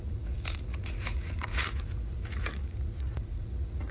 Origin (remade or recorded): remade